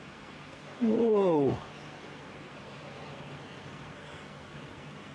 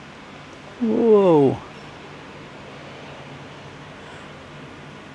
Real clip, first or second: second